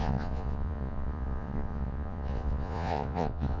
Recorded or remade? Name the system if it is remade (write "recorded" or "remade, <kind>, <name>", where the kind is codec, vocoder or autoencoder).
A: remade, vocoder, Vocos